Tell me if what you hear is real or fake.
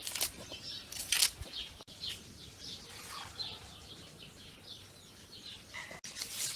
real